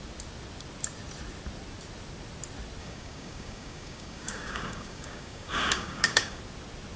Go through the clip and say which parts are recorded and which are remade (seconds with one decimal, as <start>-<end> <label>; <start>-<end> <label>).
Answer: 0.0-2.8 recorded; 2.8-6.4 remade; 6.4-7.0 recorded